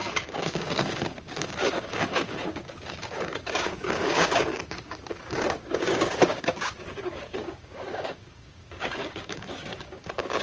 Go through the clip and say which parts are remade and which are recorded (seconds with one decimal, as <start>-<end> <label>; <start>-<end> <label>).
0.0-10.4 remade